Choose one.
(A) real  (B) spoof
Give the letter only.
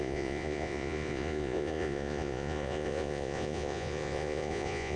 B